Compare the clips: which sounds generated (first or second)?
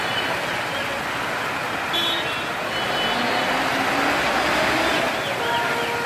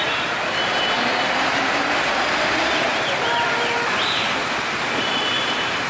second